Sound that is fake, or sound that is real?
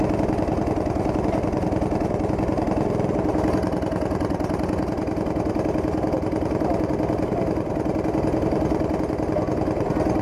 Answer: real